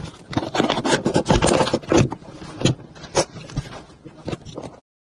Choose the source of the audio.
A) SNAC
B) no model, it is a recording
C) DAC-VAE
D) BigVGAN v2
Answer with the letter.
B